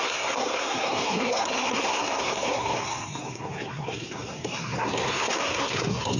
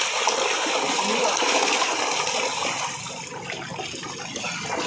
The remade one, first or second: first